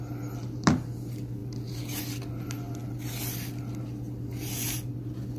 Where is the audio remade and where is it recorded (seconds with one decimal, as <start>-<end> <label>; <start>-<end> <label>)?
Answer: 0.0-5.4 recorded